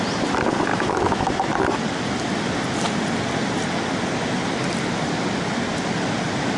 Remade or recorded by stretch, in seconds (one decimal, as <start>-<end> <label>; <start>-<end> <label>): 0.0-0.7 recorded; 0.7-1.3 remade; 1.3-6.6 recorded